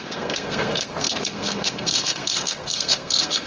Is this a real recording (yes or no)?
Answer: no